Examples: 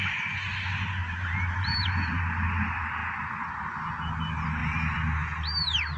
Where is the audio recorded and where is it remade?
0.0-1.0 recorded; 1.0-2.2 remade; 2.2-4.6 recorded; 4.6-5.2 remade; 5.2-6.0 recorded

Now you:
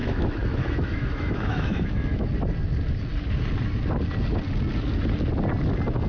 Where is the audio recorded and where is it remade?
0.0-2.3 remade; 2.3-6.1 recorded

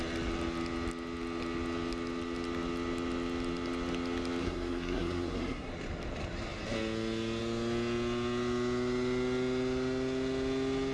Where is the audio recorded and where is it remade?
0.0-4.4 recorded; 4.4-5.7 remade; 5.7-10.9 recorded

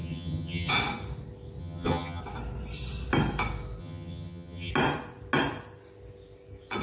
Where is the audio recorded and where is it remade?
0.0-0.7 remade; 0.7-1.6 recorded; 1.6-2.2 remade; 2.2-3.8 recorded; 3.8-4.7 remade; 4.7-6.8 recorded

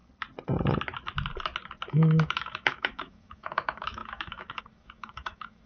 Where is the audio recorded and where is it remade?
0.0-1.9 recorded; 1.9-5.7 remade

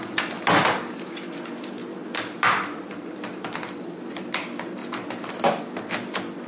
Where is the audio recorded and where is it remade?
0.0-4.8 remade; 4.8-5.7 recorded; 5.7-6.5 remade